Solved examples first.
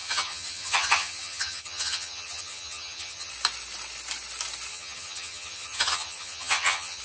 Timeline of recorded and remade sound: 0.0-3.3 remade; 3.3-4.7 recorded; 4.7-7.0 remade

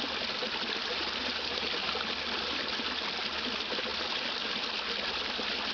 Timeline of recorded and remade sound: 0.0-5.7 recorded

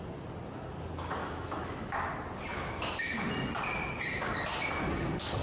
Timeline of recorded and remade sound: 0.0-1.2 recorded; 1.2-2.1 remade; 2.1-2.5 recorded; 2.5-3.3 remade; 3.3-5.4 recorded

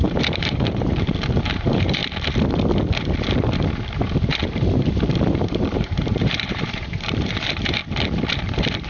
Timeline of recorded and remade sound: 0.0-2.0 remade; 2.0-5.2 recorded; 5.2-7.8 remade; 7.8-8.4 recorded; 8.4-8.9 remade

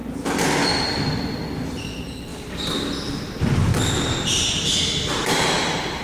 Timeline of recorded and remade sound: 0.0-0.7 recorded; 0.7-2.3 remade; 2.3-3.0 recorded; 3.0-3.7 remade; 3.7-5.3 recorded; 5.3-6.0 remade

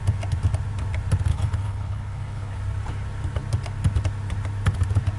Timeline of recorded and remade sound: 0.0-1.3 recorded; 1.3-2.6 remade; 2.6-5.2 recorded

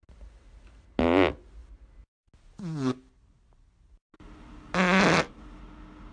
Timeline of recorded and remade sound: 0.0-6.1 recorded

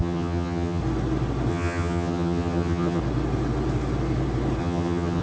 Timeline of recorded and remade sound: 0.0-0.8 remade; 0.8-1.5 recorded; 1.5-3.0 remade; 3.0-4.6 recorded; 4.6-5.2 remade